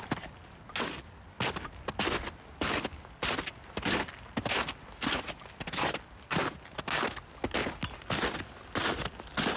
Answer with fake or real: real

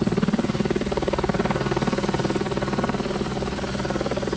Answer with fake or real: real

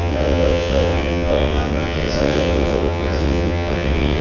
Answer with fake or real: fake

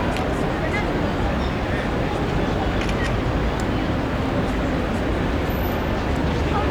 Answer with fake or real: real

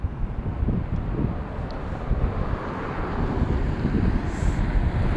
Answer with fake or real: real